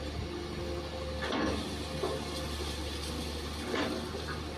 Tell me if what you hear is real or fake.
real